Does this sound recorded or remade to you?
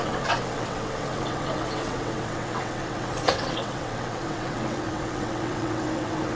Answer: remade